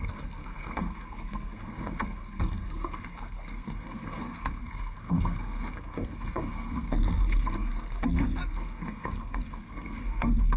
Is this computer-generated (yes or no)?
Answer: yes